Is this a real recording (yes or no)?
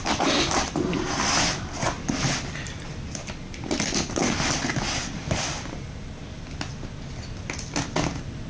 yes